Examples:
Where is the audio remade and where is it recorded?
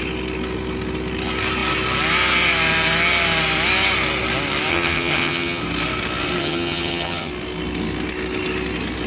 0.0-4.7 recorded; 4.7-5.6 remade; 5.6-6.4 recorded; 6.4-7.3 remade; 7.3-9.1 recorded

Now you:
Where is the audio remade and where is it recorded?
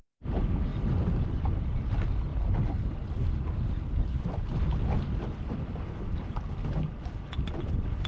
0.0-8.1 recorded